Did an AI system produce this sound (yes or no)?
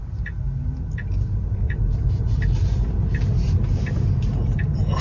no